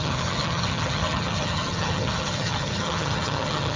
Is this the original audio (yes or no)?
no